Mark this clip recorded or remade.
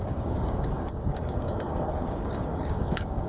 remade